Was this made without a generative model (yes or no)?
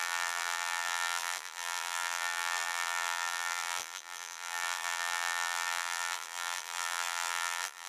no